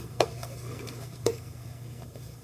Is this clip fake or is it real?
fake